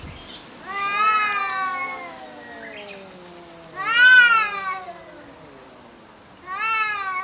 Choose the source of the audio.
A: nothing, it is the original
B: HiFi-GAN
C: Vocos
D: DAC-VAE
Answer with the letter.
A